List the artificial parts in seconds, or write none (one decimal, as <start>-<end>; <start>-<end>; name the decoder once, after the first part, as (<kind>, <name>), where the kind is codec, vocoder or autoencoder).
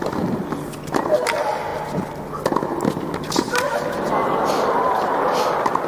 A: 0.0-1.7 (vocoder, BigVGAN v2); 5.2-5.9